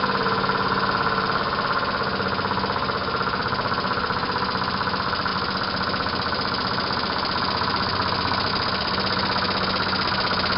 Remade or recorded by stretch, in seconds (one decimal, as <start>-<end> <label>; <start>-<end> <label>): 0.0-10.6 recorded